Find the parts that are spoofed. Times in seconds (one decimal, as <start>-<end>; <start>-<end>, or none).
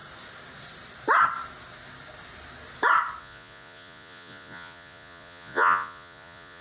3.2-6.6